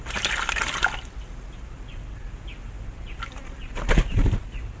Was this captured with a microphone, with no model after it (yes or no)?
yes